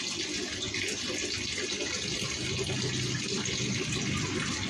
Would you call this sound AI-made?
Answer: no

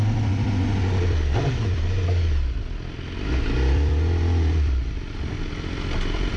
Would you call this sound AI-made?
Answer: no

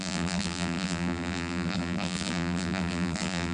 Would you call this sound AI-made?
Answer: yes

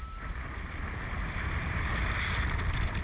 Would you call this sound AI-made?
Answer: no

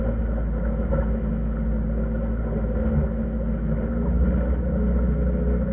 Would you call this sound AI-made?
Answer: no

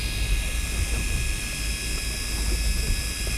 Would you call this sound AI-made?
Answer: no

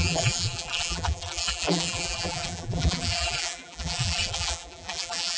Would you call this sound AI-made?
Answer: yes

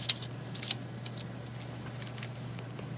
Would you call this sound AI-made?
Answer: no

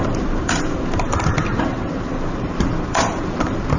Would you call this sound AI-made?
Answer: yes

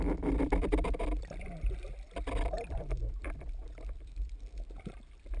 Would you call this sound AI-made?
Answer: yes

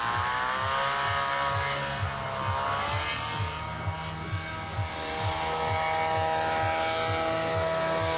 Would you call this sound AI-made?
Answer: no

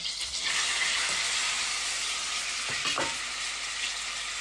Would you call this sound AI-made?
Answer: no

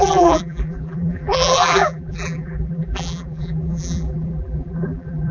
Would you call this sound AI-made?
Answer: yes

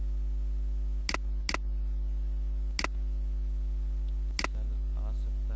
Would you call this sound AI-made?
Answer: no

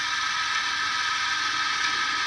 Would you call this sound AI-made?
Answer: no